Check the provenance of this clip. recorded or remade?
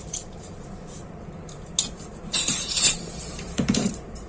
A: remade